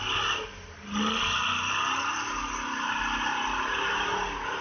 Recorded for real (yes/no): yes